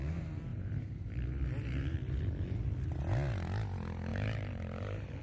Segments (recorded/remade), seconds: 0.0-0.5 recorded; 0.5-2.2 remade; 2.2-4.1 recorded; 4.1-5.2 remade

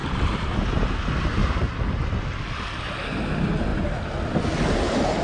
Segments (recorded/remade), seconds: 0.0-0.6 remade; 0.6-1.4 recorded; 1.4-2.2 remade; 2.2-5.2 recorded

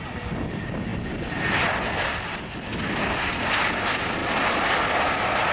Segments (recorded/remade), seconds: 0.0-5.5 recorded

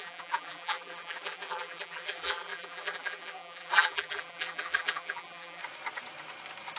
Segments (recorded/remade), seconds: 0.0-5.6 remade; 5.6-6.8 recorded

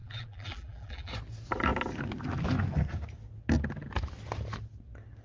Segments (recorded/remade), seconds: 0.0-1.1 remade; 1.1-5.2 recorded

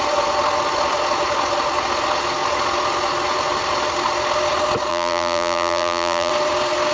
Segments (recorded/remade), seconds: 0.0-4.9 recorded; 4.9-6.3 remade; 6.3-6.9 recorded